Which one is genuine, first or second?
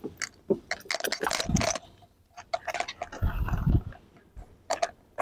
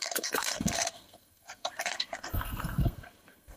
first